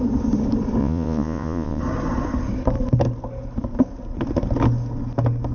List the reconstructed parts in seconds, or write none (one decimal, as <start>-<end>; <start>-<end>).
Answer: 0.8-1.8